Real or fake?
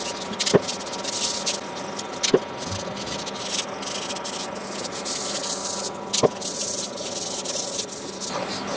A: real